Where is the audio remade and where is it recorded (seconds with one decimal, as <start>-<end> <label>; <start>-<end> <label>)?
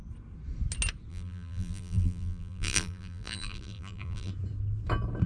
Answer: 0.0-1.1 recorded; 1.1-4.3 remade; 4.3-5.3 recorded